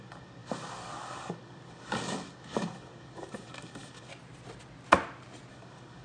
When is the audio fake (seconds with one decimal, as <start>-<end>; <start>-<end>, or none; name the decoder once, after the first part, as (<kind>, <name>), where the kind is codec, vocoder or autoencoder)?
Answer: 0.0-4.1 (codec, DAC); 5.5-6.0